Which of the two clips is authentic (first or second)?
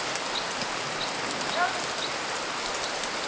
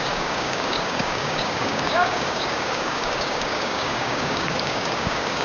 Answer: first